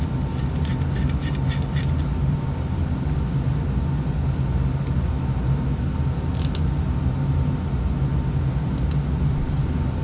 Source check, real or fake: real